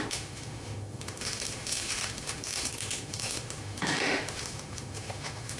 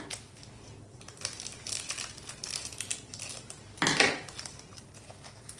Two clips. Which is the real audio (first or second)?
second